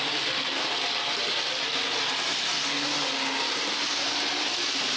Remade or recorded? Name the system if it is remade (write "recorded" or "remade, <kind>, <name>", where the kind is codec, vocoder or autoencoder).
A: recorded